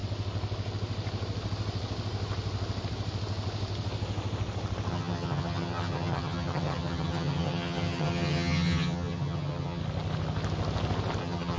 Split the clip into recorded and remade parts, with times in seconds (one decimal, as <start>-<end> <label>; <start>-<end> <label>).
0.0-4.9 recorded; 4.9-9.8 remade; 9.8-11.2 recorded; 11.2-11.6 remade